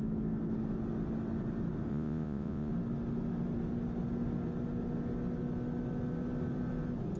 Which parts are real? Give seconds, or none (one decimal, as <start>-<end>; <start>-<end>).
0.0-1.9; 2.7-7.2